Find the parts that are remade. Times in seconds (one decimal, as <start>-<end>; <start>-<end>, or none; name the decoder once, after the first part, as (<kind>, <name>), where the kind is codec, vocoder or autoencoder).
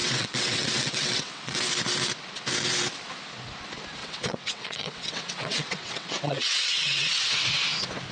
0.0-1.7 (vocoder, WaveNeXt); 4.0-7.4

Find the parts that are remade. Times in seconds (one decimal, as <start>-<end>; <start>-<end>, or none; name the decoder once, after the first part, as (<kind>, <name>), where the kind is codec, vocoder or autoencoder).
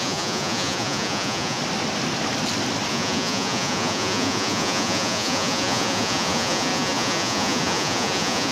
0.0-1.6 (vocoder, Vocos); 2.9-8.5